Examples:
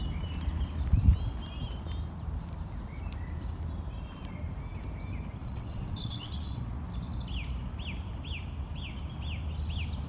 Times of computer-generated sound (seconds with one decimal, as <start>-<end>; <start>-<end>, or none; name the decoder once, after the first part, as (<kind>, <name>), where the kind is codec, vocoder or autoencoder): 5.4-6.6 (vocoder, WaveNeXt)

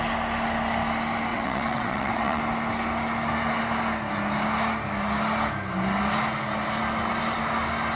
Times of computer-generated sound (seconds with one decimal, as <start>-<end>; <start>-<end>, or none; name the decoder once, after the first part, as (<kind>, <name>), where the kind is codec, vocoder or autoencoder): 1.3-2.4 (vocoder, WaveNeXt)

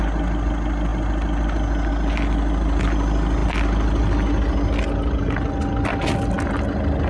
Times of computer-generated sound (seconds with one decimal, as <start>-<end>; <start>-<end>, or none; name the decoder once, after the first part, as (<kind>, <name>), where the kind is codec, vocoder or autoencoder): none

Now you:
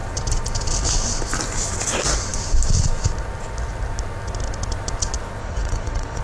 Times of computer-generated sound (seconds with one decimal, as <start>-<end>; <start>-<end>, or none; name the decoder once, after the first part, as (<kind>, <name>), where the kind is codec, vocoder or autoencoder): 5.4-6.2 (vocoder, WaveNeXt)